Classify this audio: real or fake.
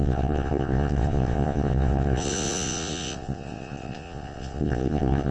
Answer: fake